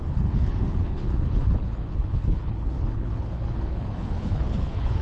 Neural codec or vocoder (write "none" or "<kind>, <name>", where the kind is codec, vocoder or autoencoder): codec, HILCodec